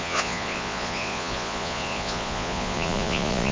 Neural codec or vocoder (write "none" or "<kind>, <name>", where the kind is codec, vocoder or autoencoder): vocoder, Vocos